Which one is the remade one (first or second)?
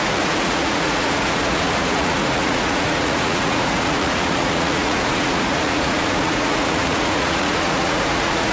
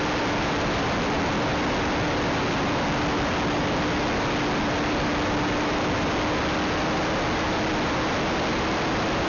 first